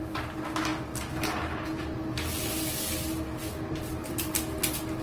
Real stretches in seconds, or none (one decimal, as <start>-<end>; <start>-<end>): 0.0-5.0